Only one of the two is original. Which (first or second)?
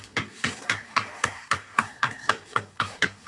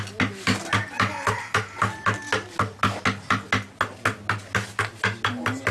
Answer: second